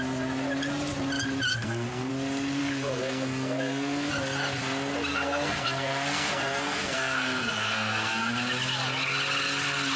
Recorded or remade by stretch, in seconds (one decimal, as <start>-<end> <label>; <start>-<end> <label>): 0.0-1.5 recorded; 1.5-2.1 remade; 2.1-2.6 recorded; 2.6-4.1 remade; 4.1-5.1 recorded; 5.1-8.3 remade; 8.3-10.0 recorded